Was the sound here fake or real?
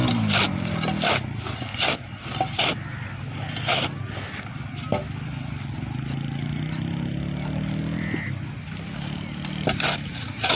real